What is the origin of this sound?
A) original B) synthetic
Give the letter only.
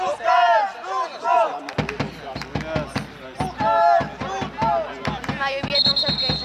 A